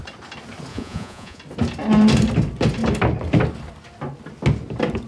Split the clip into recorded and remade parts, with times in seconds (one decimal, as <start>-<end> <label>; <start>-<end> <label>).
0.0-0.7 recorded; 0.7-1.4 remade; 1.4-5.1 recorded